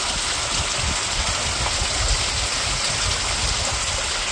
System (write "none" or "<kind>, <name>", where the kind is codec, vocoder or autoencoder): none